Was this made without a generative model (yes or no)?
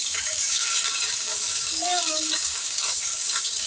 no